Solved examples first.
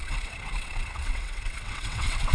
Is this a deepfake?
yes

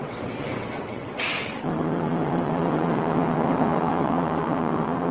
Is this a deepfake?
yes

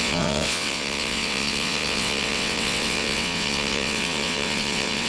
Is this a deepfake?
yes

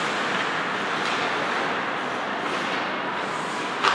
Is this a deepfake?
no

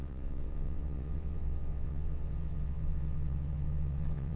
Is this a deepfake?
yes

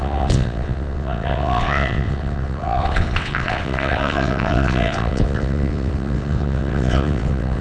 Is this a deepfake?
yes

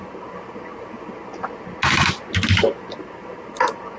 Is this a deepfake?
no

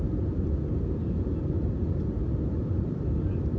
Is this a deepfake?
no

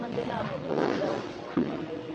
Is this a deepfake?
yes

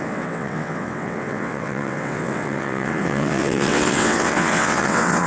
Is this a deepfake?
yes